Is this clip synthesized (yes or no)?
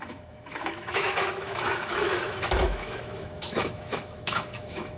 yes